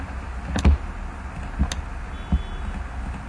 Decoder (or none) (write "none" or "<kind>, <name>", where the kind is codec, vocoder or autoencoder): none